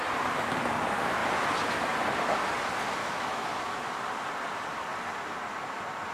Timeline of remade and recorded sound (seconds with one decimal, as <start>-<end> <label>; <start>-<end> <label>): 0.0-3.0 recorded; 3.0-3.9 remade; 3.9-6.1 recorded